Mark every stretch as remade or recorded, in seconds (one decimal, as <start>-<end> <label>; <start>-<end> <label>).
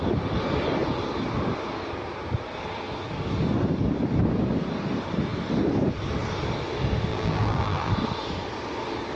0.0-7.1 recorded; 7.1-7.9 remade; 7.9-9.2 recorded